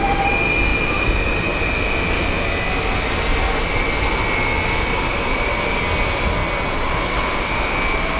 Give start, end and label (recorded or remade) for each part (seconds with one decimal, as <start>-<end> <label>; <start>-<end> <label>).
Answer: 0.0-8.2 recorded